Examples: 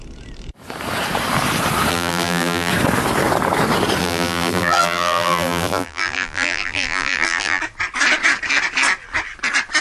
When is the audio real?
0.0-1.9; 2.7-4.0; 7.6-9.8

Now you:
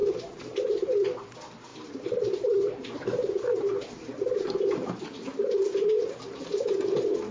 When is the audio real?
0.6-1.7; 6.1-7.3

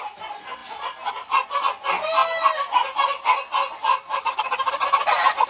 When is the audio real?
0.0-3.9; 4.7-5.5

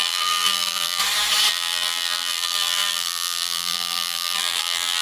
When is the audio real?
1.0-1.5

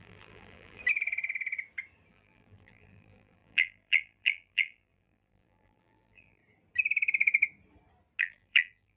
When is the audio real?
0.8-2.1; 6.4-8.2

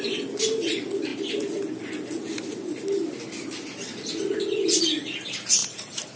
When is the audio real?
0.0-5.6

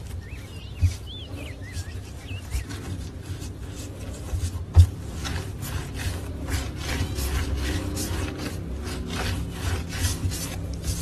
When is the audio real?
0.0-11.0

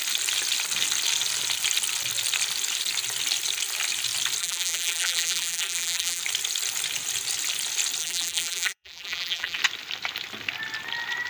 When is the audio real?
0.0-4.4; 6.2-8.0; 9.6-11.3